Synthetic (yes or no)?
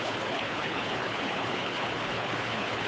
yes